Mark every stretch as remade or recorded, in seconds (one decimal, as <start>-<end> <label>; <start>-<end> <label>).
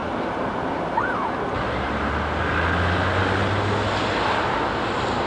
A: 0.0-5.3 recorded